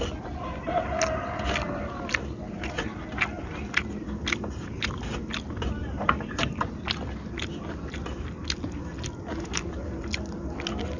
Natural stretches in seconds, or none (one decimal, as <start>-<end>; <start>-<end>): 0.0-5.8; 6.6-11.0

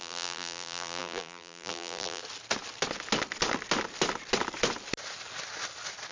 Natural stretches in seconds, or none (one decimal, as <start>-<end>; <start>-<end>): 2.2-6.1

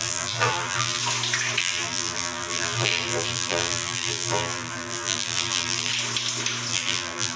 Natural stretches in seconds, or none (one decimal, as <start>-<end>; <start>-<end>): 1.0-1.6; 5.9-6.7

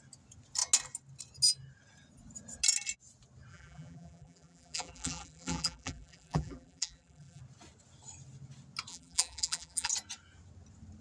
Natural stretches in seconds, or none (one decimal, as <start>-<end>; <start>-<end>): 0.0-3.5; 7.4-8.9; 9.9-11.0

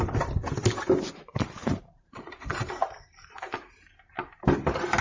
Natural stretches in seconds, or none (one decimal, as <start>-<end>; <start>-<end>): 0.0-1.3; 3.9-5.0

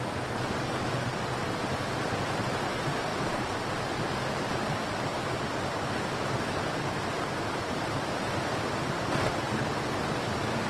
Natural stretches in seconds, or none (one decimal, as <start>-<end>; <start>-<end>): 0.0-3.1; 4.2-10.7

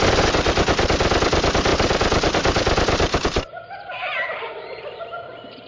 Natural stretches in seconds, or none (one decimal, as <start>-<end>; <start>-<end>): 0.0-1.7; 5.1-5.7